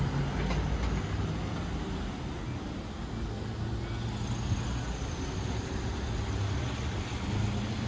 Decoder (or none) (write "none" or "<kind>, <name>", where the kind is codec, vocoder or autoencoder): none